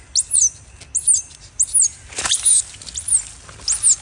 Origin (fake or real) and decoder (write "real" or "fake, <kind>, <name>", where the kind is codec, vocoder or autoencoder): real